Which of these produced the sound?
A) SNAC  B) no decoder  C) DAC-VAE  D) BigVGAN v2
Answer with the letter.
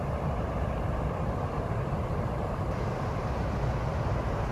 B